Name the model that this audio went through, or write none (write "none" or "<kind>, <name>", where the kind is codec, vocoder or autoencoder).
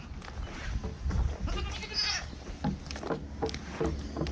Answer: none